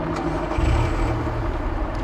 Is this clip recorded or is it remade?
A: recorded